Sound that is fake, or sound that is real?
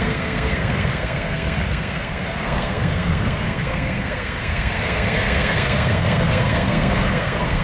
fake